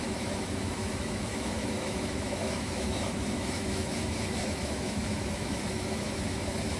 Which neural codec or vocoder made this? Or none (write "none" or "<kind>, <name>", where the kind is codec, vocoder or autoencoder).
autoencoder, DAC-VAE